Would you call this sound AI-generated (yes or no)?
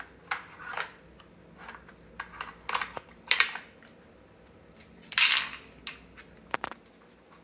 no